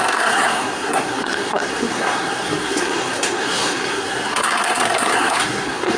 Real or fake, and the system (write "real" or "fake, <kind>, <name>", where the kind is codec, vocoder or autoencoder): fake, codec, SNAC